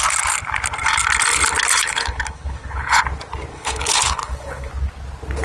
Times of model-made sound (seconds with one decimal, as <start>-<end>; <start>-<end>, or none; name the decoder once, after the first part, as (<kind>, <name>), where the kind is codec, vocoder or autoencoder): 1.7-3.0 (codec, HILCodec); 3.5-4.7